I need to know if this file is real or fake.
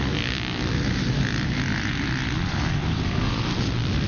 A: real